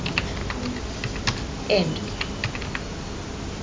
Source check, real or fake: real